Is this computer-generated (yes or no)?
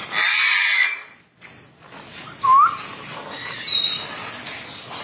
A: no